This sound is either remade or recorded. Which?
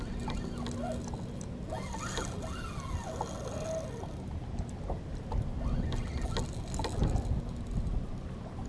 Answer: recorded